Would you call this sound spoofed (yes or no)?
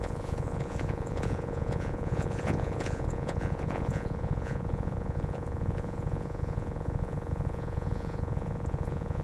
yes